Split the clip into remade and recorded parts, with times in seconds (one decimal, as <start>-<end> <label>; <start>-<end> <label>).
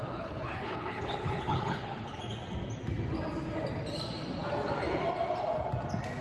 0.0-2.2 remade; 2.2-6.2 recorded